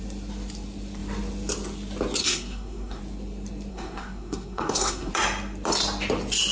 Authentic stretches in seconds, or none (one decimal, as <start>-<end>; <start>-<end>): 0.0-2.2; 3.0-3.7; 5.1-6.5